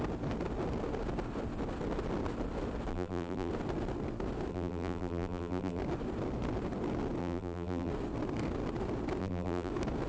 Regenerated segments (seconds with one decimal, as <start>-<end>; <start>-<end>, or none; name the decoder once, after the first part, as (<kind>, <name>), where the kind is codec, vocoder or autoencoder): 2.9-3.5 (vocoder, BigVGAN v2); 4.5-5.8; 7.2-7.9; 9.2-9.7